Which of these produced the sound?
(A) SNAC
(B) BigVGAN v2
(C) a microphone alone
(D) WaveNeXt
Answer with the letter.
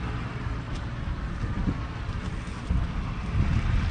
C